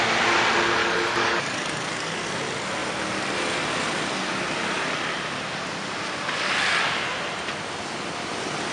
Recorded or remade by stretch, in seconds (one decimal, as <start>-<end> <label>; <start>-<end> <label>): 0.0-0.8 recorded; 0.8-2.4 remade; 2.4-8.7 recorded